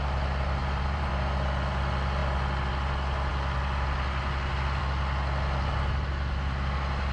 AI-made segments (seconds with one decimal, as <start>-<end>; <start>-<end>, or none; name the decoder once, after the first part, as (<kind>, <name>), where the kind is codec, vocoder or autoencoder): 0.6-1.1 (vocoder, BigVGAN v2)